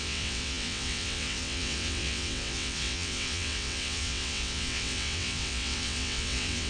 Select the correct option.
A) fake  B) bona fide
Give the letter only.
A